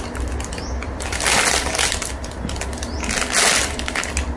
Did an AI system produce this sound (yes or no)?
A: no